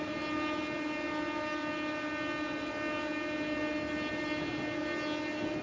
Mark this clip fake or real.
real